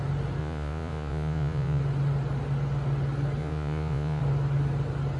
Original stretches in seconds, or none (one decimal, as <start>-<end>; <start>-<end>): 0.0-0.4; 1.8-3.4; 4.2-5.2